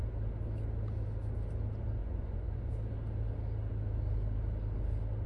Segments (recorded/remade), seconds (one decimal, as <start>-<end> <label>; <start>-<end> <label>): 0.0-2.0 recorded; 2.0-2.6 remade; 2.6-5.3 recorded